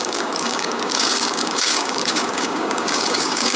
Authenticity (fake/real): fake